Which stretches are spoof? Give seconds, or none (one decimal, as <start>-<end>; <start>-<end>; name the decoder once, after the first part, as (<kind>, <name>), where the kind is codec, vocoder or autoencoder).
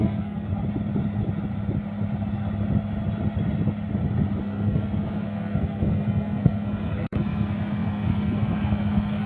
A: 0.0-0.5 (codec, SNAC); 4.4-9.3